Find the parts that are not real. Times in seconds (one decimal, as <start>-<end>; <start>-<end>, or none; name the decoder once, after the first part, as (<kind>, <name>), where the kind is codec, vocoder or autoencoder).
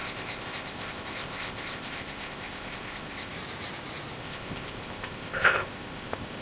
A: 0.0-3.3 (codec, ZipCodec); 4.2-6.4